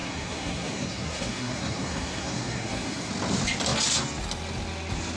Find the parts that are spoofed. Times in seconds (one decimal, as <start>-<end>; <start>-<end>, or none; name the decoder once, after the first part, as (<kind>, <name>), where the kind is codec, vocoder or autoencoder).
0.0-3.1 (codec, SNAC)